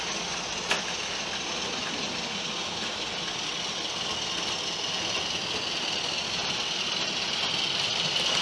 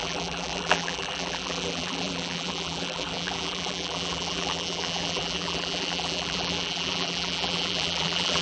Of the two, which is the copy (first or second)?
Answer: second